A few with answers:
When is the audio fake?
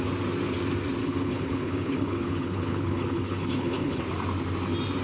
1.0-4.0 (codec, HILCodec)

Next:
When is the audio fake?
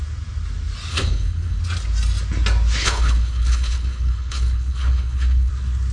0.9-1.6 (codec, HILCodec); 2.8-5.5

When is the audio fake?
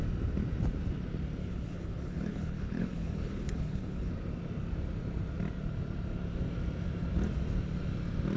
1.4-4.1 (codec, HILCodec)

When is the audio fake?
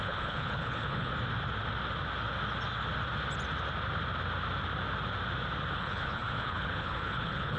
0.0-1.1 (codec, HILCodec); 5.7-7.6